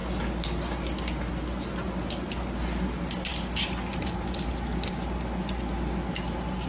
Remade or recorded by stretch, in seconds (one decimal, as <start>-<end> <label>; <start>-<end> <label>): 0.0-6.7 recorded